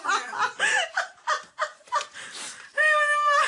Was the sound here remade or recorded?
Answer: remade